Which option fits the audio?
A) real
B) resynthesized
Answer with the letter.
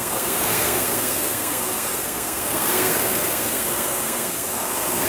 B